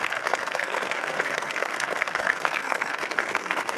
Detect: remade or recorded remade